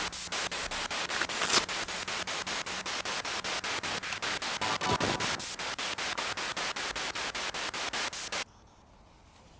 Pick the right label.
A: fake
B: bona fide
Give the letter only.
B